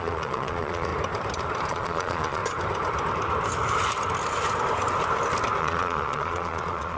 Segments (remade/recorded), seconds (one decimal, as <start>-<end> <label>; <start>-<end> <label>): 0.0-0.9 remade; 0.9-1.7 recorded; 1.7-2.4 remade; 2.4-5.6 recorded; 5.6-7.0 remade

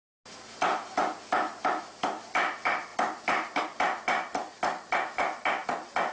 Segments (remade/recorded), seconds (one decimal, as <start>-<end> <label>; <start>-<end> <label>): 0.0-2.9 recorded; 2.9-3.6 remade; 3.6-6.1 recorded

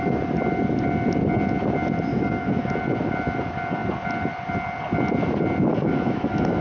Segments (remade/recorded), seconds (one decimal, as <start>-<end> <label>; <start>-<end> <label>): 0.0-2.1 recorded; 2.1-2.8 remade; 2.8-5.7 recorded; 5.7-6.6 remade

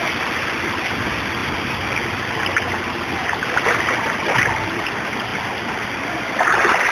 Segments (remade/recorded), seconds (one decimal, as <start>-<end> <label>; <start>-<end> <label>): 0.0-6.9 recorded

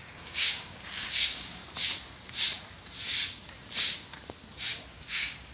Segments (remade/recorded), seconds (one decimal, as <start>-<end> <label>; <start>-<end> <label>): 0.0-1.6 remade; 1.6-4.9 recorded; 4.9-5.5 remade

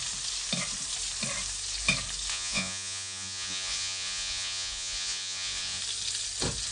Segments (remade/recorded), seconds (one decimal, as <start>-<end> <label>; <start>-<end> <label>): 0.0-2.3 recorded; 2.3-5.8 remade; 5.8-6.7 recorded